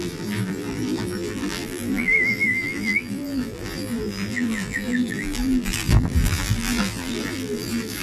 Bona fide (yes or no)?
no